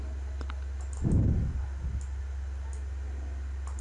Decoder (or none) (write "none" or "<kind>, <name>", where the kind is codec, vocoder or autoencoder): none